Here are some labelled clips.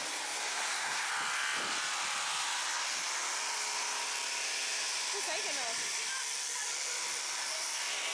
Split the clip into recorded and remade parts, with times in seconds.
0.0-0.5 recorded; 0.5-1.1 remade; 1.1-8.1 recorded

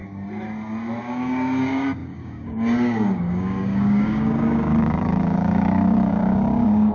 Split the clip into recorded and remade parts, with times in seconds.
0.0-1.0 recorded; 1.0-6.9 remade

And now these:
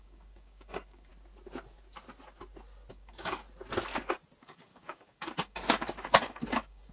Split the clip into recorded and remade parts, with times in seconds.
0.0-1.1 remade; 1.1-2.9 recorded; 2.9-3.4 remade; 3.4-4.4 recorded; 4.4-6.9 remade

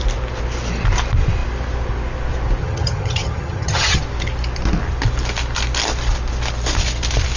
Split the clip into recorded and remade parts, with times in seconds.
0.0-2.6 recorded; 2.6-4.0 remade; 4.0-7.4 recorded

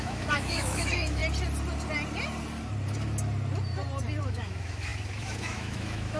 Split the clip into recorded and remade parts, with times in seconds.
0.0-1.2 remade; 1.2-4.2 recorded; 4.2-6.2 remade

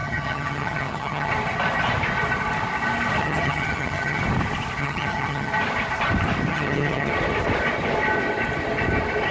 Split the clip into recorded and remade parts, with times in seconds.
0.0-1.3 remade; 1.3-3.2 recorded; 3.2-4.2 remade; 4.2-4.8 recorded; 4.8-5.5 remade; 5.5-6.5 recorded; 6.5-7.1 remade; 7.1-9.3 recorded

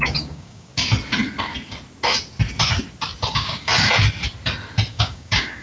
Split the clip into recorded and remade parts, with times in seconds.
0.0-0.7 remade; 0.7-3.3 recorded; 3.3-3.7 remade; 3.7-4.9 recorded; 4.9-5.6 remade